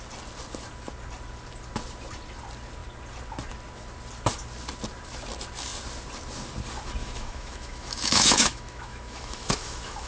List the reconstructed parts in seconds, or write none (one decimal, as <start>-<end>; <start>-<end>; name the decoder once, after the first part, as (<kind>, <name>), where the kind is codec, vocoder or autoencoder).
7.0-10.1 (autoencoder, DAC-VAE)